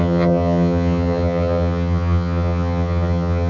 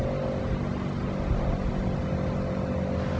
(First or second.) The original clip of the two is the second